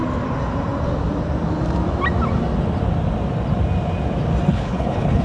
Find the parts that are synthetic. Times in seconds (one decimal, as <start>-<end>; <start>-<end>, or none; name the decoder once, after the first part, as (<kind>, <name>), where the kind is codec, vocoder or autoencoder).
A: 4.5-5.2 (codec, HILCodec)